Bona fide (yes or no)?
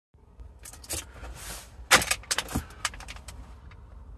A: yes